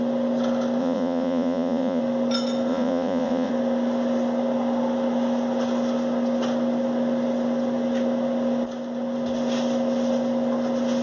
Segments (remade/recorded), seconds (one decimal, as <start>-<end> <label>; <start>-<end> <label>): 0.0-0.8 recorded; 0.8-2.0 remade; 2.0-2.7 recorded; 2.7-3.5 remade; 3.5-11.0 recorded